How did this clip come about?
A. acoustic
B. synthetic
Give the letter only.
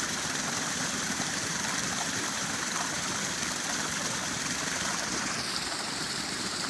B